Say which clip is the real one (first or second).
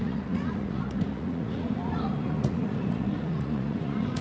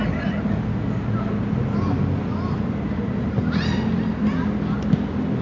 second